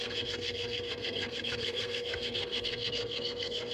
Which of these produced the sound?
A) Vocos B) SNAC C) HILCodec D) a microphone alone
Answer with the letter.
B